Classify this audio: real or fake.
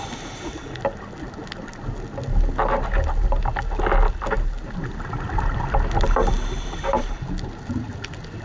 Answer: real